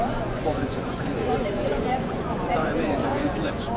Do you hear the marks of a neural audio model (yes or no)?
yes